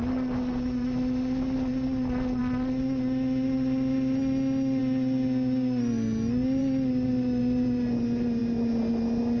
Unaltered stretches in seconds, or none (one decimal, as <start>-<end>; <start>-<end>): 0.0-6.6; 7.4-9.4